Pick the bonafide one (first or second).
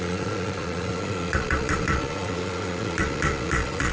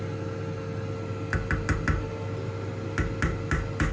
second